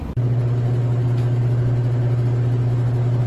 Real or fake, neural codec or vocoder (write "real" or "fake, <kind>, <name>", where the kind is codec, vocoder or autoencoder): real